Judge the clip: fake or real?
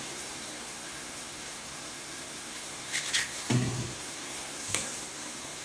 fake